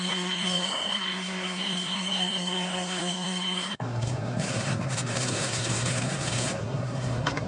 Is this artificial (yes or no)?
yes